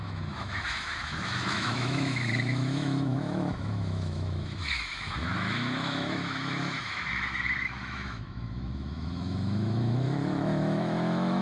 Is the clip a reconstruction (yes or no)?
yes